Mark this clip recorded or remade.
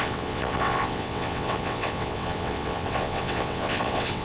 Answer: remade